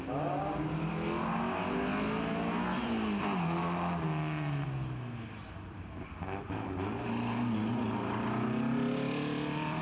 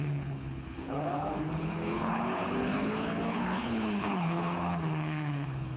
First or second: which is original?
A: first